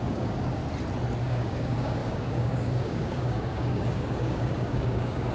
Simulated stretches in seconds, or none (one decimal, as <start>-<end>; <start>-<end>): 0.0-0.6; 1.2-5.3